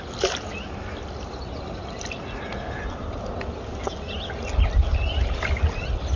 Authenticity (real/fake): real